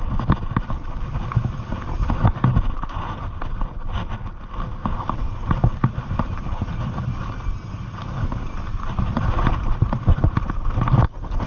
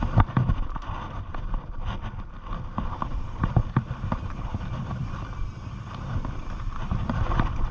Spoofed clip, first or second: second